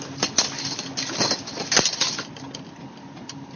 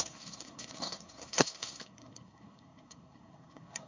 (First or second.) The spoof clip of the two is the second